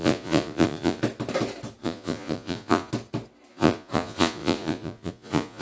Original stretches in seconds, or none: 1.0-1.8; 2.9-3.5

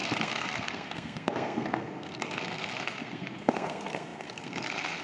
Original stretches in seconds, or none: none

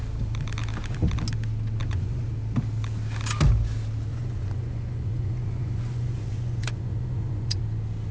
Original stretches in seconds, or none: 0.0-1.8; 2.3-4.1; 7.6-8.1

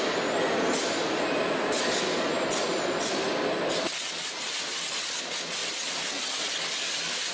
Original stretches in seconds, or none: 0.0-7.3

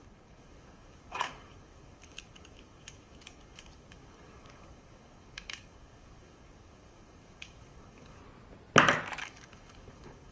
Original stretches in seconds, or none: 8.2-9.2

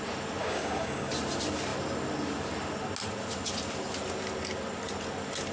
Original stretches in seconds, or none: 0.0-0.4; 1.1-5.5

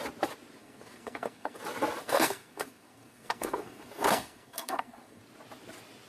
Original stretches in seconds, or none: 0.0-0.6; 1.6-2.0; 5.2-6.1

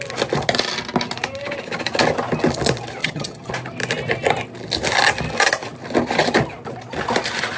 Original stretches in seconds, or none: 0.0-3.0; 3.5-7.6